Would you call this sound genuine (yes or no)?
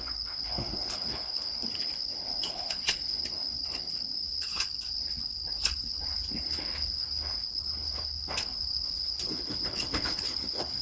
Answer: no